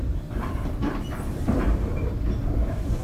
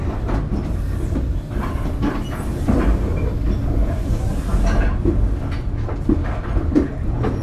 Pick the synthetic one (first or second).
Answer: first